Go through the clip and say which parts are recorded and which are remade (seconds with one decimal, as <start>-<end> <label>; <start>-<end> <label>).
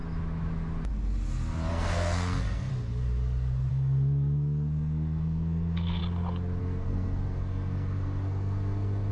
0.0-1.7 recorded; 1.7-2.7 remade; 2.7-3.7 recorded; 3.7-6.0 remade; 6.0-6.6 recorded; 6.6-9.1 remade